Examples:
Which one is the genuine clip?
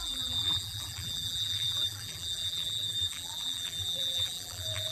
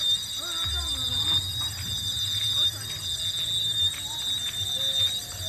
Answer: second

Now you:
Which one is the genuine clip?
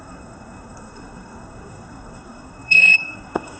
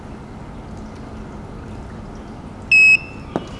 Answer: second